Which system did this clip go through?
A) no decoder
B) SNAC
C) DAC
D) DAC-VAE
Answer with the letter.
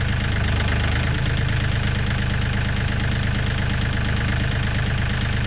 A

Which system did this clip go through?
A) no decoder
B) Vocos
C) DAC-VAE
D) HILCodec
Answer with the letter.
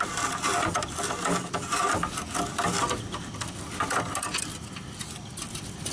A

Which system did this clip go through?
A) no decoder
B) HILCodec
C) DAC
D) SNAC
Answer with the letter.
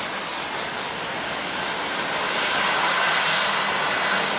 A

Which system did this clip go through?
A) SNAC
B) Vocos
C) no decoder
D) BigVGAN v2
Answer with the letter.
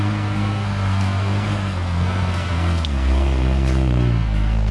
A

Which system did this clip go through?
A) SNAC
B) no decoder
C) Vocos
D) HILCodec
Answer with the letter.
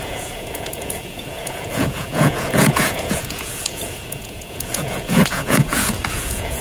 C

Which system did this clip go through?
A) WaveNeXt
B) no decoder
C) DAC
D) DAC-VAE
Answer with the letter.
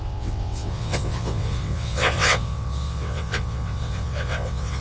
A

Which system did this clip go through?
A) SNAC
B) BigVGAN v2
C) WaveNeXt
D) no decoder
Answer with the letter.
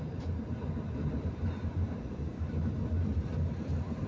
B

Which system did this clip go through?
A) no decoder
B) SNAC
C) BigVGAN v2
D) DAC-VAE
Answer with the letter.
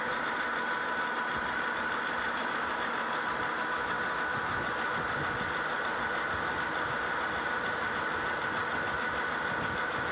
A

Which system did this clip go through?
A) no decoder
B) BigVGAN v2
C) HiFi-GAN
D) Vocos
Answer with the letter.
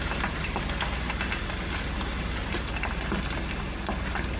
A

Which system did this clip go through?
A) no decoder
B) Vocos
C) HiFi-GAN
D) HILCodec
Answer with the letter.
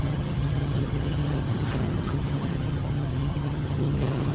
C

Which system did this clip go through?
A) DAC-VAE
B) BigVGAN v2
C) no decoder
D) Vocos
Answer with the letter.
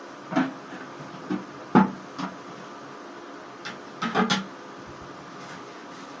C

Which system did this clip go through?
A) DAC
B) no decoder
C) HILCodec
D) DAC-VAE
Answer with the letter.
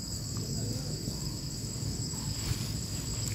A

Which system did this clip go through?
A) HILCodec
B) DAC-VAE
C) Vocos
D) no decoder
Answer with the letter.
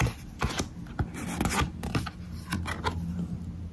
D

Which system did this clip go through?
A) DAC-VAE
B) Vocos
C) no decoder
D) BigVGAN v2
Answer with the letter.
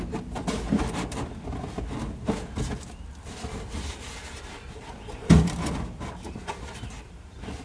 C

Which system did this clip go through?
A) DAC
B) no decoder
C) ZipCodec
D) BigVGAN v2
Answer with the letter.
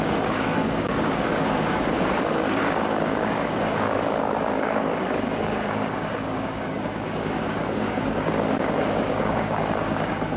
A